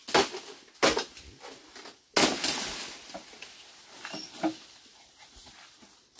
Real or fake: real